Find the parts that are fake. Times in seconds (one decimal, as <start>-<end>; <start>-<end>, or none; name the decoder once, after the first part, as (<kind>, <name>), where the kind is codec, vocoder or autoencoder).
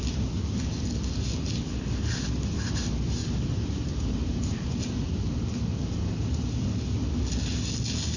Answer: 3.2-4.8 (vocoder, BigVGAN v2)